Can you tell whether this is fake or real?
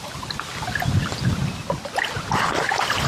real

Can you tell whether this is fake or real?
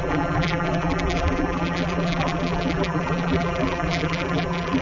fake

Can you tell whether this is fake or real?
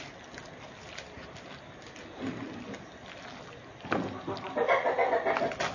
real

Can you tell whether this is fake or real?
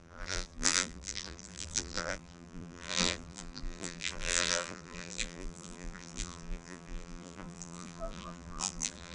fake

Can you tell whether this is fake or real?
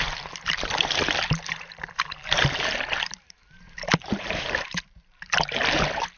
fake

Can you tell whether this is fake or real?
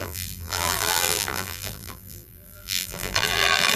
fake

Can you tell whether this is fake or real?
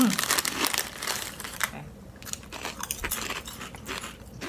fake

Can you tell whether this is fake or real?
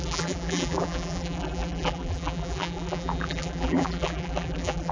fake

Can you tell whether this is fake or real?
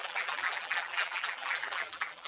fake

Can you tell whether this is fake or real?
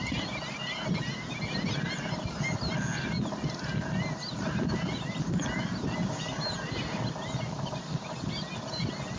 real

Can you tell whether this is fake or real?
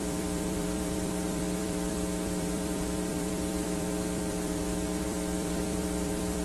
fake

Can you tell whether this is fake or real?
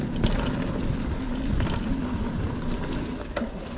real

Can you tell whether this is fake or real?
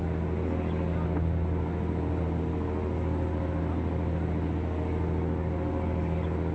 real